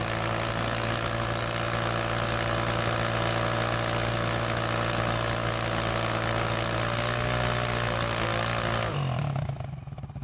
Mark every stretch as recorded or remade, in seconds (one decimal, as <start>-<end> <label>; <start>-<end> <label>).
0.0-10.2 recorded